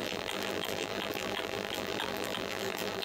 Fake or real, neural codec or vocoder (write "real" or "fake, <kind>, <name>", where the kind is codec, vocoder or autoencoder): fake, vocoder, BigVGAN v2